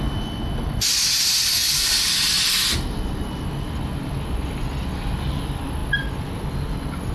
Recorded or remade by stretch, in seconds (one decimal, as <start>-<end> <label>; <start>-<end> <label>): 0.0-7.1 recorded